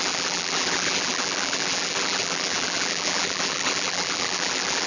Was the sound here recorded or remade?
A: remade